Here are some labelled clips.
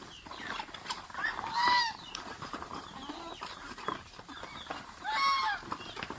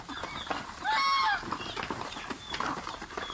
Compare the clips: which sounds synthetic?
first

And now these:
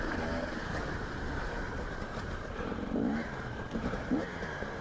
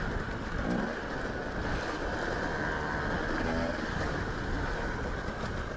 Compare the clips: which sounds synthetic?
first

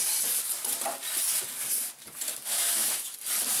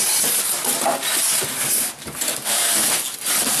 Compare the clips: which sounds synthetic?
first